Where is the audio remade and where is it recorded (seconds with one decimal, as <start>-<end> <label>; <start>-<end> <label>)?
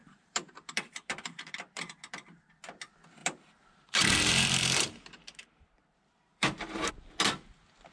0.0-2.5 remade; 2.5-3.2 recorded; 3.2-6.9 remade; 6.9-7.9 recorded